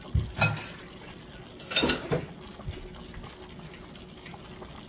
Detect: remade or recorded recorded